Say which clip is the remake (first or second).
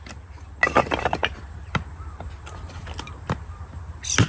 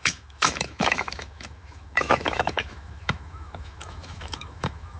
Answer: second